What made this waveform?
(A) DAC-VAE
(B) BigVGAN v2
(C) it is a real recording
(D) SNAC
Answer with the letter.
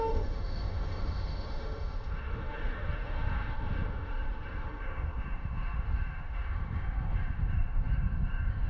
A